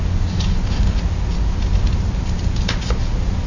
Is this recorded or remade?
recorded